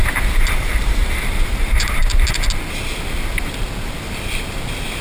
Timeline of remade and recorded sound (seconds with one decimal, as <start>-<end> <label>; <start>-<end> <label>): 0.0-2.0 remade; 2.0-5.0 recorded